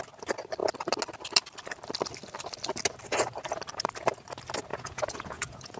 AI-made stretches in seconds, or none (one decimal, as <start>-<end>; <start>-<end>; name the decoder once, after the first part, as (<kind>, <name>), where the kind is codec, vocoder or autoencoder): 4.7-5.8 (vocoder, Vocos)